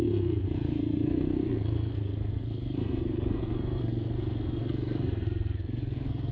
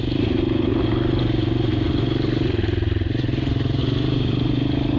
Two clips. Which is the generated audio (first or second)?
first